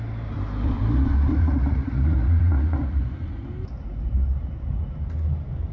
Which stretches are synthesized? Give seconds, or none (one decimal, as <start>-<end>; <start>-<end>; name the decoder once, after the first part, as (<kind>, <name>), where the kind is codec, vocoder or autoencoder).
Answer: 1.3-3.0 (vocoder, Vocos)